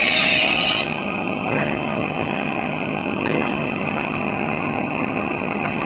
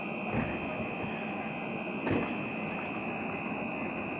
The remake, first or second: first